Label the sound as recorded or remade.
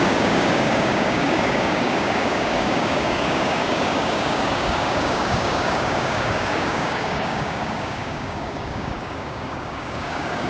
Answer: remade